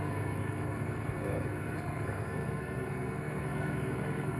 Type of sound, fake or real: fake